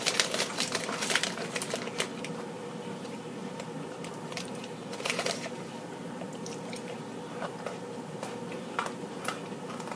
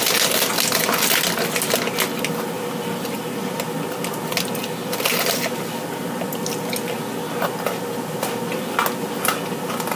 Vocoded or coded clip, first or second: first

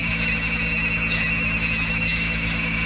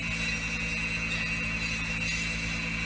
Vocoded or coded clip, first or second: first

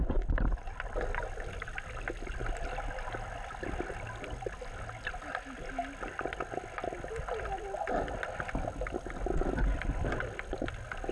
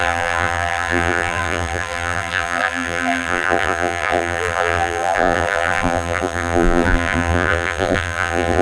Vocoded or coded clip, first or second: second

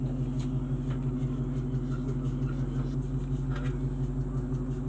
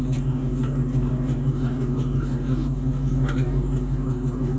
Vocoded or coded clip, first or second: second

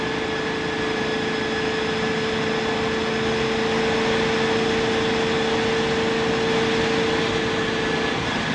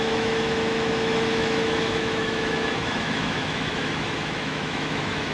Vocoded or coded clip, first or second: second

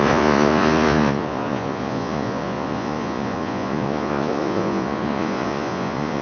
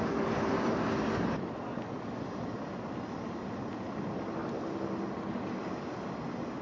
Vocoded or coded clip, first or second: first